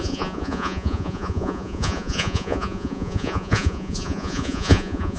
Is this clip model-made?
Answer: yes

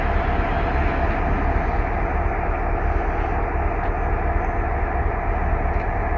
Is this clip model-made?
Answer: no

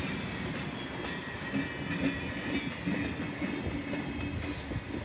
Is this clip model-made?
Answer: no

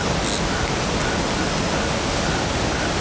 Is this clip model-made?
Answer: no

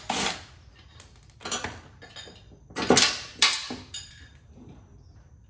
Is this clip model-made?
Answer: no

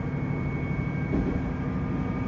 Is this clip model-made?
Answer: no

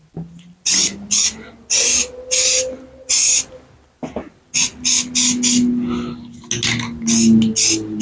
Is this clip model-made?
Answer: no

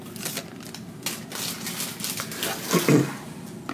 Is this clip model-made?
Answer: no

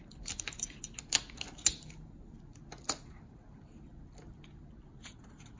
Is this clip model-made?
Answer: no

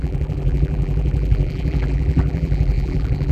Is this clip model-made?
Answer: yes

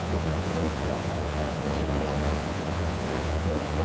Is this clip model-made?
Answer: yes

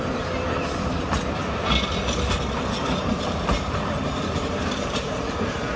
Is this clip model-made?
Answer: yes